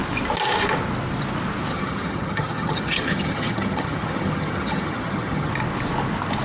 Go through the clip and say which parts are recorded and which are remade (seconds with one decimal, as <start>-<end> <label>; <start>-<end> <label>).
0.0-1.7 recorded; 1.7-5.5 remade; 5.5-6.4 recorded